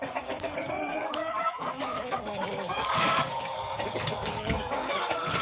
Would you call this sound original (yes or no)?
no